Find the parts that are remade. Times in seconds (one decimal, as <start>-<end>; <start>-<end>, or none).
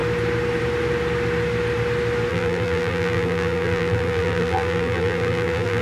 2.3-5.8